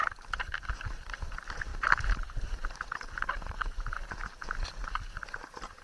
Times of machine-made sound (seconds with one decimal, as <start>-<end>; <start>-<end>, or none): 0.0-0.9